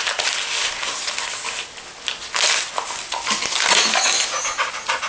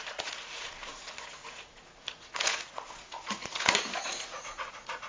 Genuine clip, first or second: first